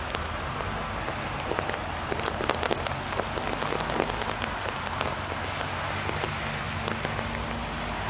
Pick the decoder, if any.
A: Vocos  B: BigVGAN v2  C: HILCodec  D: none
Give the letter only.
D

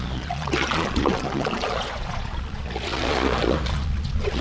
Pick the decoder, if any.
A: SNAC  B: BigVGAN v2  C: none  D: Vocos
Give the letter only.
D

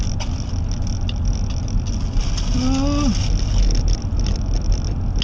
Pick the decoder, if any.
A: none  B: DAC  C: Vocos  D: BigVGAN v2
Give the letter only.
A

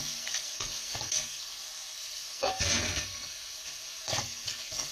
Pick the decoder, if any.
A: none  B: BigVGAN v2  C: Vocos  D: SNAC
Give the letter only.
D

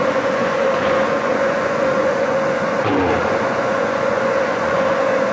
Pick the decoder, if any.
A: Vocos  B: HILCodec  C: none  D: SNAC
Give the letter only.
A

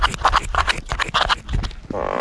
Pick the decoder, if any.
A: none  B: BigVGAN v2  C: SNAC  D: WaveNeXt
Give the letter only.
A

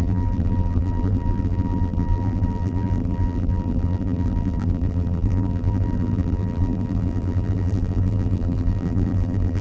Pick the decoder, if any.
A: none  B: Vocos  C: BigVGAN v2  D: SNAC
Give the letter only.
C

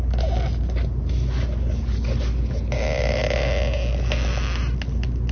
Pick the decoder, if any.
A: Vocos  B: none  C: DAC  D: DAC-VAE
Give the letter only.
B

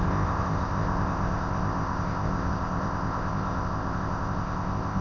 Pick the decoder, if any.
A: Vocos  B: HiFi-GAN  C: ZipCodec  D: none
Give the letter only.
C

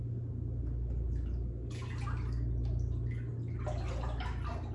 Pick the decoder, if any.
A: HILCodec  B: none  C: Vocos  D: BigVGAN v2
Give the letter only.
B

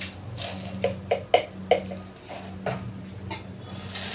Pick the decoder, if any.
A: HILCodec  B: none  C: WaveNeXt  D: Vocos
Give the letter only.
B